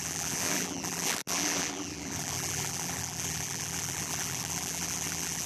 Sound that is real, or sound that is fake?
fake